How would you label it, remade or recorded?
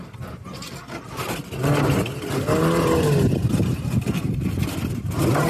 recorded